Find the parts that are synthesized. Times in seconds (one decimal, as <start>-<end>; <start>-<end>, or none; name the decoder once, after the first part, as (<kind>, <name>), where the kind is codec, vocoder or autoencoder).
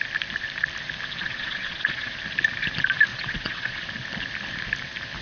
1.2-2.1 (vocoder, Vocos); 3.1-3.8